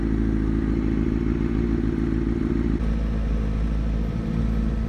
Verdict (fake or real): real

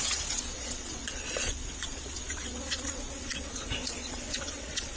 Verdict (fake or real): fake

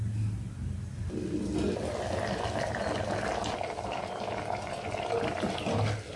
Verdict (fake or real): real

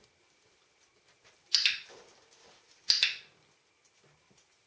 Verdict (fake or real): real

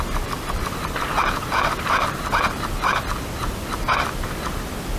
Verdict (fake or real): real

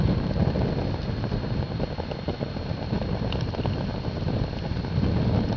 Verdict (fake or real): real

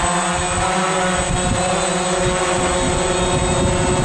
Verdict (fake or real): real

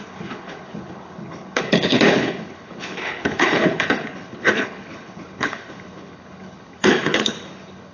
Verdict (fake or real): fake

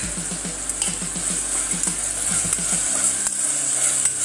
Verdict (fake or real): real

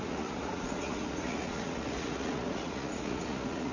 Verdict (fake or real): fake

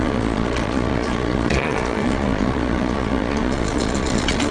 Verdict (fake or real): fake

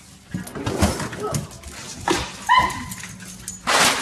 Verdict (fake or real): real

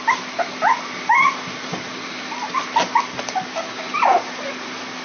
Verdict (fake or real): real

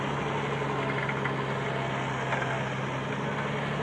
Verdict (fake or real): real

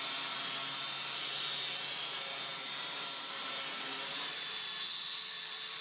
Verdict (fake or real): real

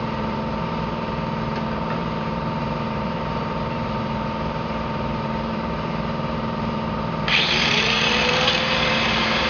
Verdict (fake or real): fake